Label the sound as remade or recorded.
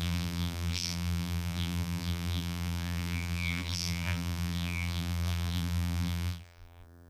remade